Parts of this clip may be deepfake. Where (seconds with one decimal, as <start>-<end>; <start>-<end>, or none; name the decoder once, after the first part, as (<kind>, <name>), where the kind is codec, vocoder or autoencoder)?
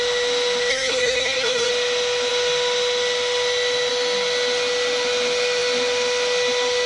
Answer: 0.7-1.7 (codec, SNAC)